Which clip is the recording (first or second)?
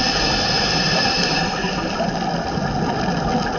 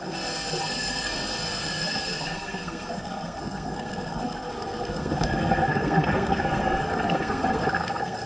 first